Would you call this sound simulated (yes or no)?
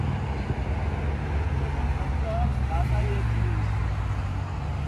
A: no